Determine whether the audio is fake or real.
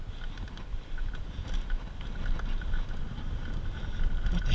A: real